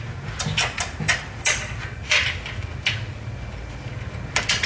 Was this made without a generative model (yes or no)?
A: yes